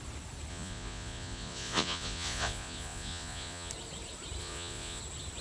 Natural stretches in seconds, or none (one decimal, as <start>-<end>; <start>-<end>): 0.0-0.5; 3.7-4.4; 5.0-5.4